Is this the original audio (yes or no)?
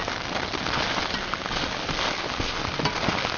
yes